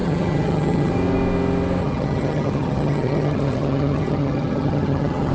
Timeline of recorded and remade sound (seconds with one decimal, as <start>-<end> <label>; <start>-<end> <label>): 0.0-0.9 remade; 0.9-1.8 recorded; 1.8-5.3 remade